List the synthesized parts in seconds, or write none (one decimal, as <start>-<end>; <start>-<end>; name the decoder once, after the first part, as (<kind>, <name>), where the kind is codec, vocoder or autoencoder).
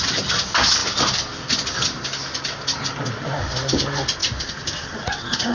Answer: none